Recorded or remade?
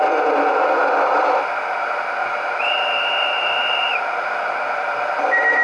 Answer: recorded